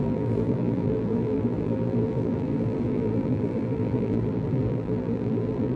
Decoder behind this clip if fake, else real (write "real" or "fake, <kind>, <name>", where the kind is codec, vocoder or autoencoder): fake, vocoder, BigVGAN v2